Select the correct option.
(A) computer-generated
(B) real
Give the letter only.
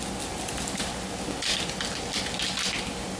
B